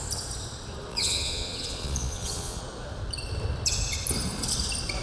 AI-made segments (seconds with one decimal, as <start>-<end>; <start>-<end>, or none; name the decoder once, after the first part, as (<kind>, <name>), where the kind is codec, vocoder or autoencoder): 0.9-2.6 (vocoder, Vocos)